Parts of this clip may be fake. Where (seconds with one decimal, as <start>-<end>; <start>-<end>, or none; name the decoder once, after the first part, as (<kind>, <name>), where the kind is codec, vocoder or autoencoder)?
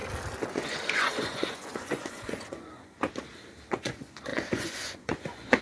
0.5-3.0 (vocoder, Vocos); 3.7-5.6